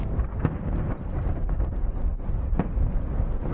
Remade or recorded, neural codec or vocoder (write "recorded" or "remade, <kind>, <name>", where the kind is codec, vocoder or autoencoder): recorded